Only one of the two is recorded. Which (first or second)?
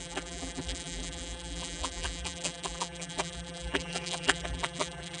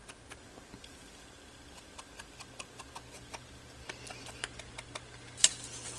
second